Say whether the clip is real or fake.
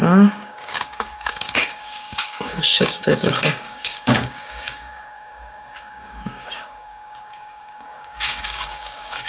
fake